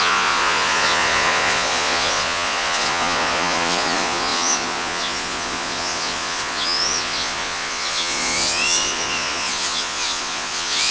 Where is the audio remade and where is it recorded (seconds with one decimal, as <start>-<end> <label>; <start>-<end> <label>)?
0.0-10.9 remade